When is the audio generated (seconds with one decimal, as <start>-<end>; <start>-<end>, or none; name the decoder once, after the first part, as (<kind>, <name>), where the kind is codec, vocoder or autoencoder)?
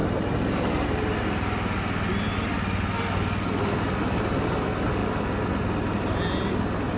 none